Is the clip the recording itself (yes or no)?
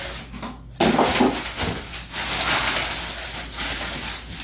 yes